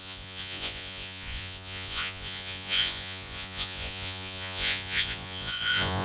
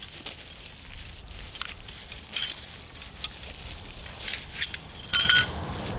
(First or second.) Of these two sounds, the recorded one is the second